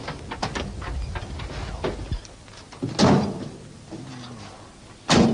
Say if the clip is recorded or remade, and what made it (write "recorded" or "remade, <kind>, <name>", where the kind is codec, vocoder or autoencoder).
recorded